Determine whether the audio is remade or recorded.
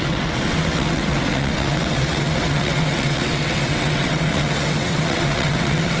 remade